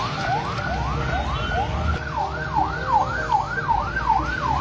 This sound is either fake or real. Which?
real